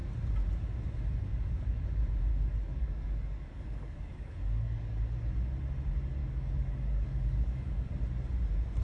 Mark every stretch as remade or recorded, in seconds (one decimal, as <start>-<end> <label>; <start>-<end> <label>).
0.0-1.3 recorded; 1.3-1.8 remade; 1.8-2.3 recorded; 2.3-5.0 remade; 5.0-6.2 recorded; 6.2-7.9 remade; 7.9-8.8 recorded